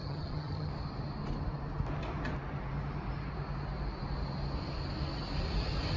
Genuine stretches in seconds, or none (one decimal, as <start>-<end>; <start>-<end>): 0.7-6.0